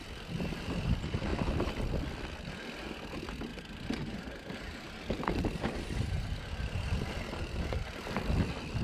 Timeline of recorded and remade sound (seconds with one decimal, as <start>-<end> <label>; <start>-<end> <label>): 0.0-0.8 remade; 0.8-1.3 recorded; 1.3-1.9 remade; 1.9-3.5 recorded; 3.5-8.8 remade